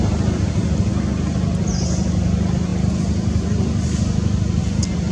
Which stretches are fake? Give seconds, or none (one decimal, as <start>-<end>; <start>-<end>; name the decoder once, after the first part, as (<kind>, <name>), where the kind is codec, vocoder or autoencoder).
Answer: none